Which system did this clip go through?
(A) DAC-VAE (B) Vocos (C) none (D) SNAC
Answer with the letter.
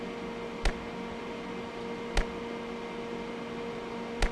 C